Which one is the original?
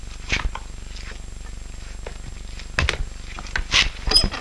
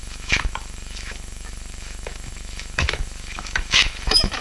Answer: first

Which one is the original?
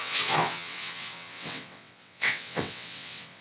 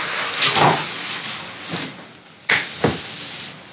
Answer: second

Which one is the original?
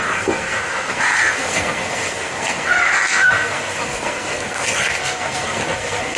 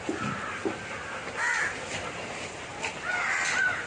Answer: second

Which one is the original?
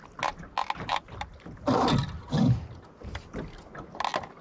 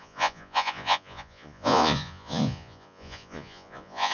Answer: first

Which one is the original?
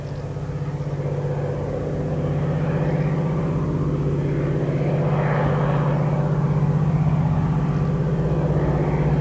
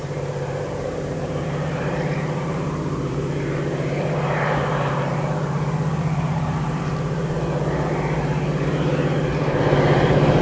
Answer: first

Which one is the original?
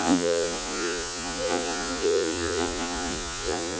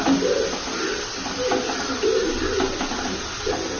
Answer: second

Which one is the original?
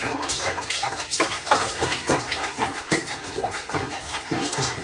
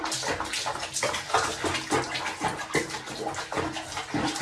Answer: second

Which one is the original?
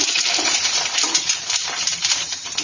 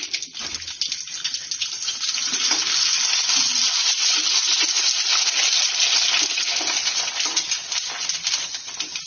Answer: second